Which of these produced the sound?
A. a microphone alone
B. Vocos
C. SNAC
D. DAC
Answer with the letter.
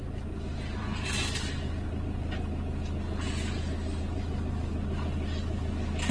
A